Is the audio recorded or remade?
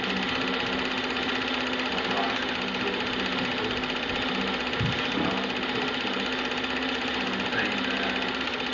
recorded